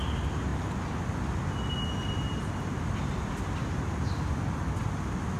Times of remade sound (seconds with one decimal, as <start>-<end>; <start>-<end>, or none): none

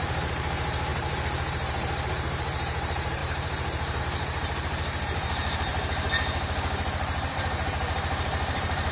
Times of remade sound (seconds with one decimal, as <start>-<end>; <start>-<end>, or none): 0.0-5.7; 7.3-8.9

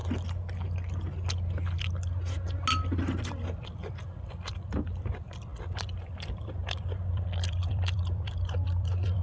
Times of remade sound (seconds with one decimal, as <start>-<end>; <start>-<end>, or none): 3.2-9.2

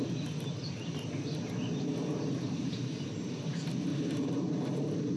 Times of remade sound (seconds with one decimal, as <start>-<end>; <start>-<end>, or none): 3.9-4.7

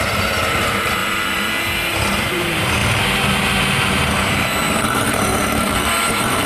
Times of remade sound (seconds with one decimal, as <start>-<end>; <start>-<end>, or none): 0.0-1.0; 1.9-2.8; 4.7-6.5

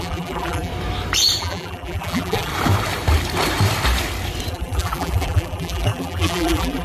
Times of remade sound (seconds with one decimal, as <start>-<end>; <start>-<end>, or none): 0.0-0.7; 1.4-2.5; 4.5-6.8

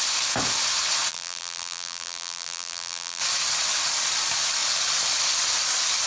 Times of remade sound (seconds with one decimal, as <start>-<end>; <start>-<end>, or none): 1.1-3.2